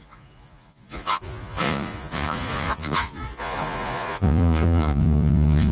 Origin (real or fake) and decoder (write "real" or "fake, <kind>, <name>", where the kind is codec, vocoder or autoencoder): fake, vocoder, Vocos